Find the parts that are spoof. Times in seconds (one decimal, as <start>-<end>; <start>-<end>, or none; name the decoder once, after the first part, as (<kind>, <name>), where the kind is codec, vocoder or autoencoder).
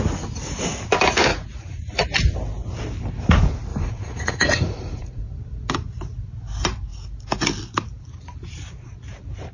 1.3-2.0 (vocoder, Vocos); 3.7-5.2